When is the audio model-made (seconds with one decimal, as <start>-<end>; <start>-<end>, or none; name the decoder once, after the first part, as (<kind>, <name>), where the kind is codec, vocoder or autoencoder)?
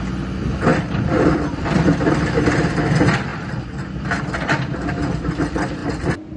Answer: 0.7-2.3 (vocoder, BigVGAN v2); 3.3-4.2